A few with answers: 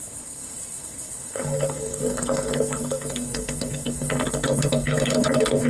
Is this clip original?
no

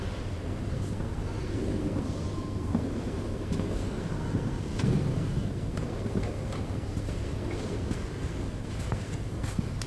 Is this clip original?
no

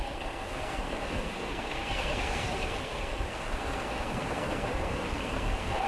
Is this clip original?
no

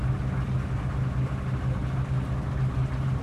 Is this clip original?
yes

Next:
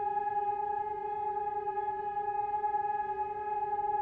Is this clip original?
yes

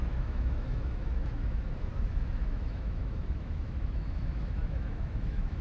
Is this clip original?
no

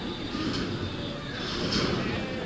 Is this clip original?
yes